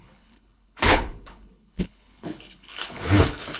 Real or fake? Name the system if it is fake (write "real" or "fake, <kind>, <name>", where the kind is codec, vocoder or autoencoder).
fake, codec, HILCodec